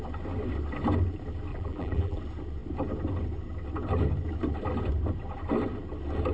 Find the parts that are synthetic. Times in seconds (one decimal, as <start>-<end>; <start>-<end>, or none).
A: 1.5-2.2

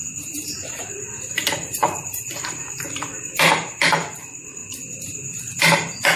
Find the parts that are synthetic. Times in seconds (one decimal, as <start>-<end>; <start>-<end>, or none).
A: 0.0-4.6

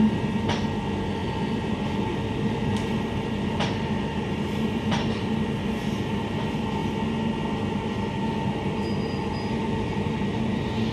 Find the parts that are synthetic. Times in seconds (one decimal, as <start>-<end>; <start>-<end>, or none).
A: 1.2-5.3

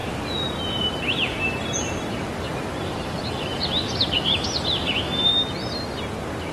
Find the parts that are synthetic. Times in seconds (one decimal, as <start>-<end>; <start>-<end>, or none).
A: 0.0-5.3

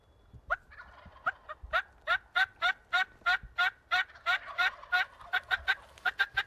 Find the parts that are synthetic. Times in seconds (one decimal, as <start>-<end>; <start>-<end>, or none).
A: none

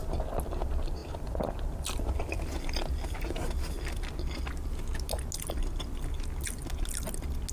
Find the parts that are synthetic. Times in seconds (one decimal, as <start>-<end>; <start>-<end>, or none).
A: none

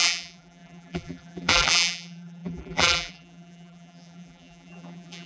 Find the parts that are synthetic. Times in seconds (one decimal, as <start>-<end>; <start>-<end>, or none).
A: 0.0-5.3